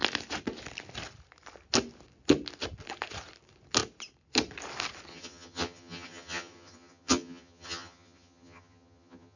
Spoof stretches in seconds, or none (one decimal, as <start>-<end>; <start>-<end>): 5.1-9.4